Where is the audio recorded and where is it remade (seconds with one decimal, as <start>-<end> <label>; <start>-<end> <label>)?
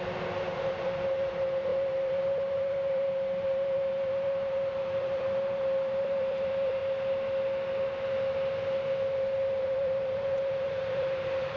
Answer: 0.0-6.8 remade; 6.8-9.6 recorded; 9.6-11.6 remade